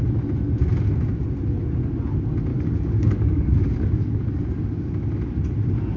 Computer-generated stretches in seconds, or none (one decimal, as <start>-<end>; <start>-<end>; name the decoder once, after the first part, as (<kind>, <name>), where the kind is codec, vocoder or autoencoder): 2.5-4.4 (codec, DAC)